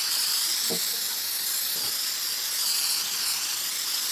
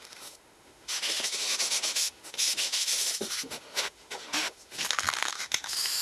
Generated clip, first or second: second